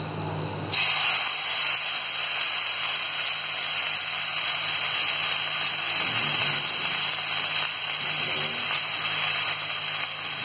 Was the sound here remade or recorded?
recorded